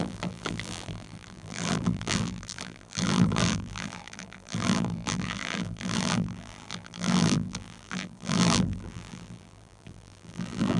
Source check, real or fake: fake